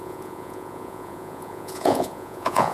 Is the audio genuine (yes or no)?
no